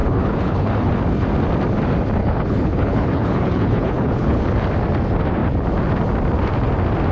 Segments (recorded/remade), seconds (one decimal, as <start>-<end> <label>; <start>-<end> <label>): 0.0-0.9 remade; 0.9-2.2 recorded; 2.2-4.4 remade; 4.4-7.1 recorded